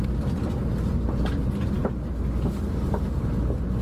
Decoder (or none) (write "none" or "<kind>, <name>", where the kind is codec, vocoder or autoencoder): none